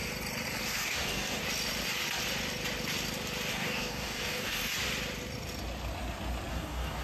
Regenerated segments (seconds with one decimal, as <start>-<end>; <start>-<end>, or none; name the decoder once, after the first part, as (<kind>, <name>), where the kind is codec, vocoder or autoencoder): 0.6-1.4 (codec, DAC); 3.5-4.6; 6.5-7.0